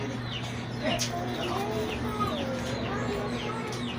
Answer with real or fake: real